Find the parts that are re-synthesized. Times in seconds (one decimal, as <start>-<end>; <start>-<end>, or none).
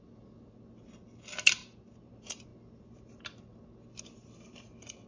none